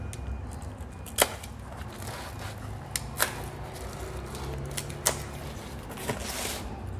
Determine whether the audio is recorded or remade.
recorded